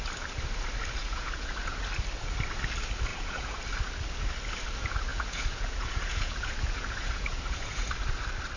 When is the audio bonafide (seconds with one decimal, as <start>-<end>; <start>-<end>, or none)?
0.0-1.0; 1.8-3.1; 3.6-5.1; 7.9-8.6